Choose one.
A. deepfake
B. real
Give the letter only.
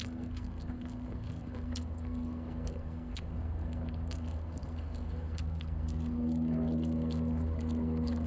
A